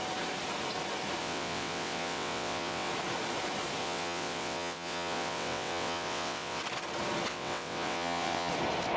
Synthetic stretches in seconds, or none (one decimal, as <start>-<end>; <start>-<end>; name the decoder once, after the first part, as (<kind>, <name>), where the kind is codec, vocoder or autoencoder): 1.2-2.9 (vocoder, WaveNeXt); 3.8-6.6; 7.3-8.5